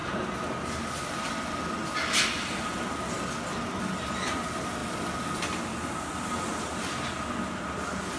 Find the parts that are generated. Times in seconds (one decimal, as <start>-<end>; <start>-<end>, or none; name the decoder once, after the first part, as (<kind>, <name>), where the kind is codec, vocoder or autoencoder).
none